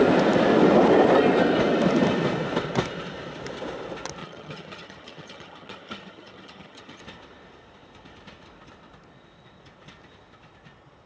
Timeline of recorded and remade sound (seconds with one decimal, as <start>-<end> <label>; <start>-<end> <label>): 0.0-4.2 recorded; 4.2-7.0 remade; 7.0-11.1 recorded